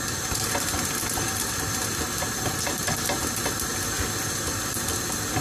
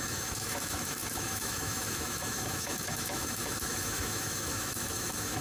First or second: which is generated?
second